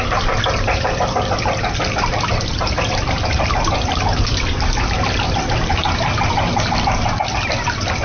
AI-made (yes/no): no